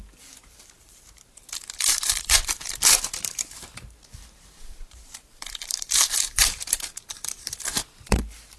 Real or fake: fake